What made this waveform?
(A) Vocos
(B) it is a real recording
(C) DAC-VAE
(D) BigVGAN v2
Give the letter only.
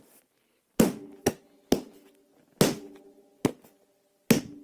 B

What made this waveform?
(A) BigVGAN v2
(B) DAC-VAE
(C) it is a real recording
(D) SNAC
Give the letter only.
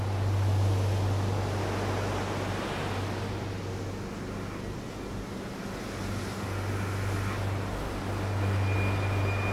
C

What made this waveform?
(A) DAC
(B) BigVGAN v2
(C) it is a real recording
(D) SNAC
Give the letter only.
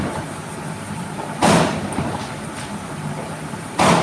B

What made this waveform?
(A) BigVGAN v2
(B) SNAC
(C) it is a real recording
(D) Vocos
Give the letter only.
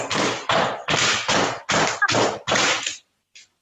C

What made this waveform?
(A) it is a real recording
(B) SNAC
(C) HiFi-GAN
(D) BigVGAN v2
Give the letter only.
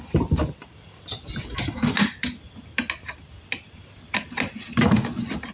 A